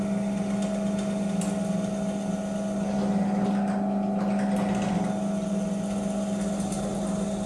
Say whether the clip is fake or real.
real